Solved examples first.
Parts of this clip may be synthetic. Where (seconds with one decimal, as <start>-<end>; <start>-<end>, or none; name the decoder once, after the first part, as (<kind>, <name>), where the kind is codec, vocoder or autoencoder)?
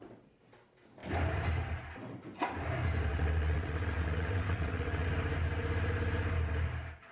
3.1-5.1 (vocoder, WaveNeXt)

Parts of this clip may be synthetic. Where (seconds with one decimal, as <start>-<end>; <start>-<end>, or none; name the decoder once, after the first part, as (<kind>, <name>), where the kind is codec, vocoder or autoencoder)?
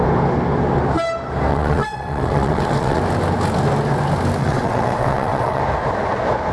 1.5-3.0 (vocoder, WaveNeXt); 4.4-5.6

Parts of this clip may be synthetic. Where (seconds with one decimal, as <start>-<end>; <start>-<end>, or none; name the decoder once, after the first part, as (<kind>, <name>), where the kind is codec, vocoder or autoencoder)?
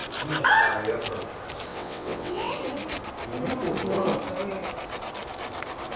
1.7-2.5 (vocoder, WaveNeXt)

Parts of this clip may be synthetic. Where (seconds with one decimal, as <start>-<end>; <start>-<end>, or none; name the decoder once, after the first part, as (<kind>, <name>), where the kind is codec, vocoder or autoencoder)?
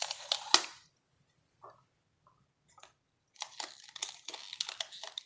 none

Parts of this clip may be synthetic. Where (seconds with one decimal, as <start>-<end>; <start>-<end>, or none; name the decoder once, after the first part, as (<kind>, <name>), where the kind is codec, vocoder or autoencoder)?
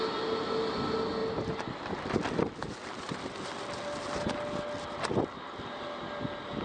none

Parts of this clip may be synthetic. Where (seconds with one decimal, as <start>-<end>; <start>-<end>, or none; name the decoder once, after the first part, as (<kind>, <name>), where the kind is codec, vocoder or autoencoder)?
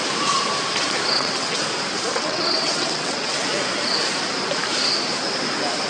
1.1-1.6 (vocoder, WaveNeXt); 2.1-3.4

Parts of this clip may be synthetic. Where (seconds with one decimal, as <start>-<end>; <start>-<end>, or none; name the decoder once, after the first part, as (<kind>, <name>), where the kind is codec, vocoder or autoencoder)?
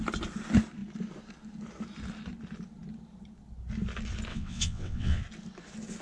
4.3-5.2 (vocoder, WaveNeXt)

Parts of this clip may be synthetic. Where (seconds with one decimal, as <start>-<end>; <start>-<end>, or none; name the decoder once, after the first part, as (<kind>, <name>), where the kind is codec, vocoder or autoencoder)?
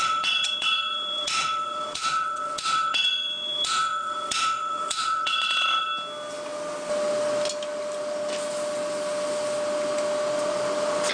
0.0-5.9 (vocoder, WaveNeXt)